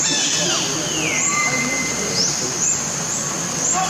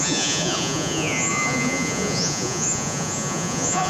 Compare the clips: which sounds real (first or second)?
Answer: first